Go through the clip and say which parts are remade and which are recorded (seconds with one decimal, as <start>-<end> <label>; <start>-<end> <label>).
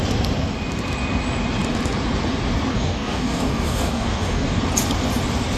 0.0-2.7 recorded; 2.7-4.6 remade; 4.6-5.6 recorded